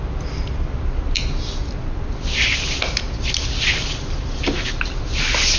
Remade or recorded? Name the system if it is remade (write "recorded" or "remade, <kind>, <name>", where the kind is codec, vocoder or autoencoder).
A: recorded